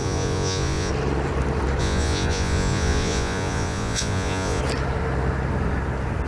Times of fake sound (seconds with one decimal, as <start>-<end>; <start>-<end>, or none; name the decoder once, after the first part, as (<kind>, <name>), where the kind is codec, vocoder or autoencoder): 0.0-0.9 (vocoder, Vocos); 1.8-4.6